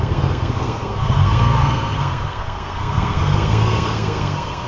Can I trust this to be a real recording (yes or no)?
no